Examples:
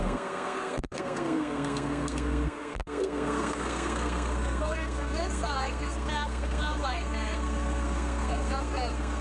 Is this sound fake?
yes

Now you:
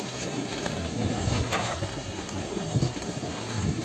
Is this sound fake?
yes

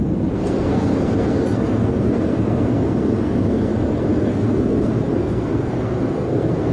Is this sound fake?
yes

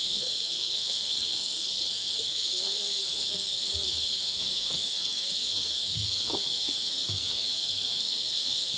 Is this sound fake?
yes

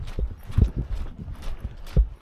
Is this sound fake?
no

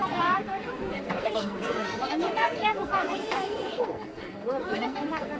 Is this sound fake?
yes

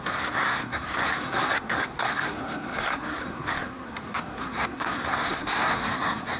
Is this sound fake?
yes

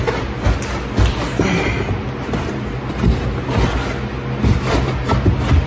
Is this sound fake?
no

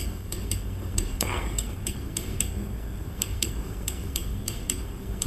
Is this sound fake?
yes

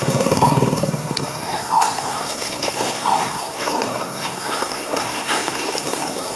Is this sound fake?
yes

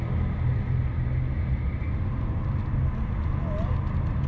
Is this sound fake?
no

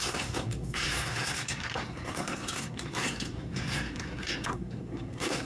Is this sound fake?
yes